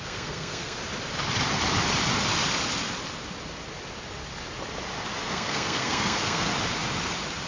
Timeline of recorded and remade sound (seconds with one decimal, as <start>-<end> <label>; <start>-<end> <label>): 0.0-0.8 remade; 0.8-5.3 recorded; 5.3-6.5 remade; 6.5-7.5 recorded